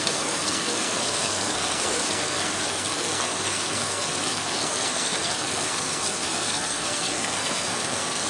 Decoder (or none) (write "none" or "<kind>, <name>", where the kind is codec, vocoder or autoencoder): codec, SNAC